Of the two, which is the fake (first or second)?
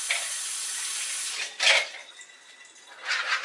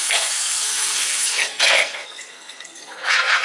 second